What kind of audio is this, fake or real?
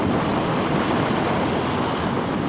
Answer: real